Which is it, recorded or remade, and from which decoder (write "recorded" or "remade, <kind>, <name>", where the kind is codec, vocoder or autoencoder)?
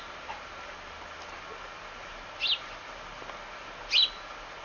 recorded